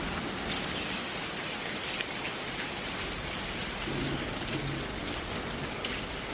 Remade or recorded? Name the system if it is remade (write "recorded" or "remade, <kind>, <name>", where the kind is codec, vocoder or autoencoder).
recorded